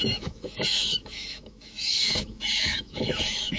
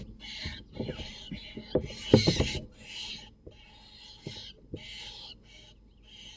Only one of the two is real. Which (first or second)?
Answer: second